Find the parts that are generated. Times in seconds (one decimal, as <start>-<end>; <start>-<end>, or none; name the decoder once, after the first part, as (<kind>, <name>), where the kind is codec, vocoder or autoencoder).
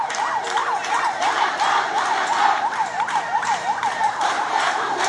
0.6-2.3 (vocoder, BigVGAN v2); 2.8-5.1